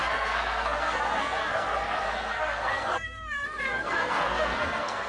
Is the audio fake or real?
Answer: fake